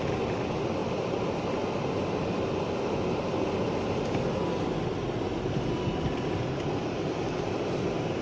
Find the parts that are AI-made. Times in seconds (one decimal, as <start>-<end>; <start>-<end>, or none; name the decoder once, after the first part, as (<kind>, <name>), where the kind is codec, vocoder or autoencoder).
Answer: none